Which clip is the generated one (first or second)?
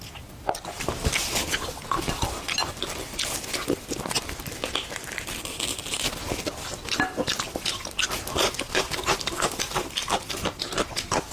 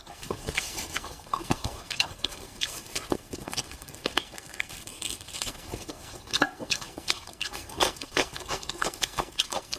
second